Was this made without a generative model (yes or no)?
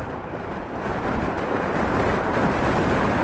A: no